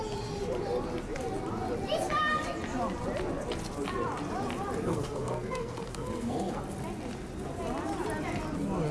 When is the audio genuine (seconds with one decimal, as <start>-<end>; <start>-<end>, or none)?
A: 0.0-4.9; 6.6-8.9